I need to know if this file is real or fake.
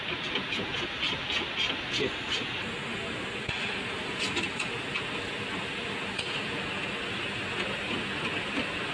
real